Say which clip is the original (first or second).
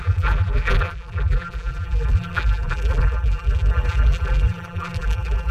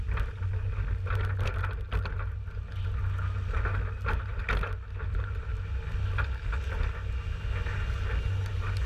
second